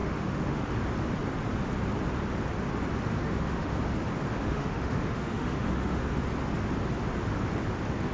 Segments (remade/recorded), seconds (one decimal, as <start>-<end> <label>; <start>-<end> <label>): 0.0-0.7 remade; 0.7-3.2 recorded; 3.2-3.8 remade; 3.8-4.4 recorded; 4.4-6.2 remade; 6.2-8.1 recorded